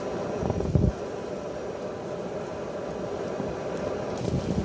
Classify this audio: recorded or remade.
recorded